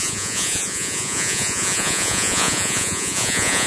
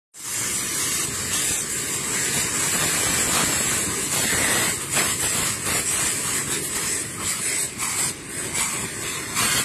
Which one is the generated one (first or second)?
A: first